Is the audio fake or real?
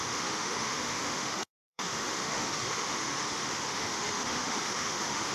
fake